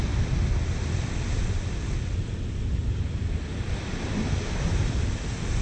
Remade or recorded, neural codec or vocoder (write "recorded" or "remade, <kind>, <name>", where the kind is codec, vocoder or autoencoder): recorded